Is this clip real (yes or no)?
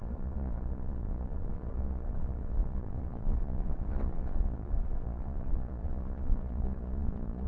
no